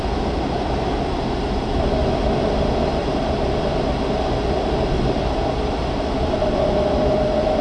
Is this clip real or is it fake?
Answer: real